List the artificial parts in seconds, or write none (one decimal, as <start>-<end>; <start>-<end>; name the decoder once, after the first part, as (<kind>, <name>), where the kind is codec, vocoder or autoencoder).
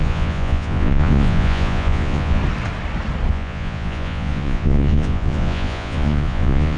0.0-2.4 (vocoder, Vocos); 3.3-6.8